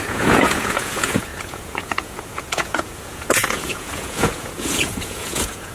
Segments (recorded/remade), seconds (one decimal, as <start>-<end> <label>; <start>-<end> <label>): 0.0-5.7 remade